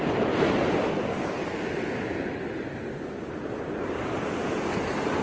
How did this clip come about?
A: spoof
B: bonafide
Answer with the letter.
B